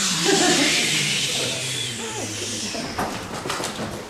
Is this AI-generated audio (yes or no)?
yes